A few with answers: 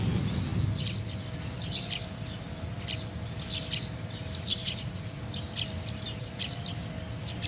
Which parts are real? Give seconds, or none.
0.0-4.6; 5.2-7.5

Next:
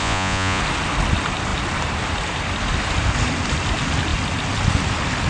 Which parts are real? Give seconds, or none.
0.6-5.3

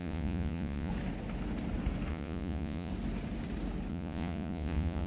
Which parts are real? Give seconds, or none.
0.9-2.1; 2.9-3.9

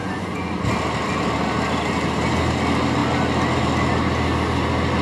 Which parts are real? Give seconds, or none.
0.6-5.0

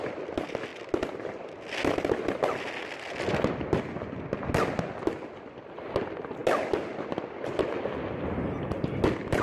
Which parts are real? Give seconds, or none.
0.0-9.4

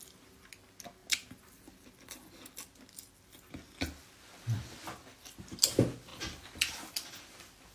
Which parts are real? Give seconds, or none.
0.0-7.7

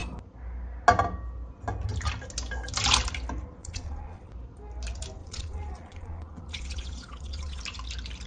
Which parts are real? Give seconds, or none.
0.0-3.6; 4.3-5.2; 7.6-8.3

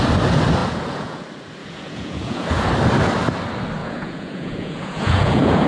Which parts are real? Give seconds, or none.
0.0-0.6; 1.2-1.6; 2.7-3.8